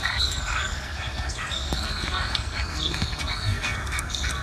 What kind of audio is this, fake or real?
fake